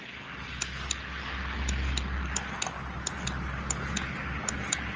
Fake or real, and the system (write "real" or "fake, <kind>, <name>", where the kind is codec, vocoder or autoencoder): real